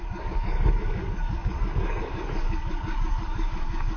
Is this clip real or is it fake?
fake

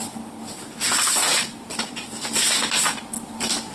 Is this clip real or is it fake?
real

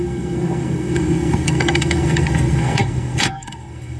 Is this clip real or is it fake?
fake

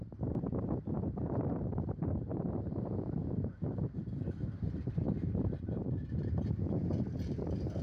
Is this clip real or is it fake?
fake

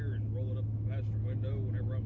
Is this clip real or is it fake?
real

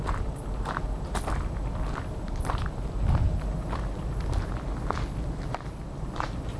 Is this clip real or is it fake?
real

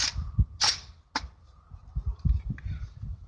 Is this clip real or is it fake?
real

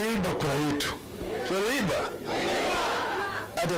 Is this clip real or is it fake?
fake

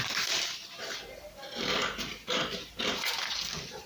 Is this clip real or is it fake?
fake